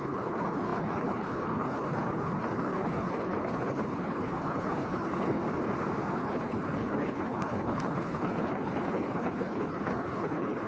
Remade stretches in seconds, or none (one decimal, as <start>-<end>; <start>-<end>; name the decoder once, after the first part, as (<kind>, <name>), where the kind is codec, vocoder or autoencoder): 0.0-5.4 (codec, HILCodec); 6.1-10.7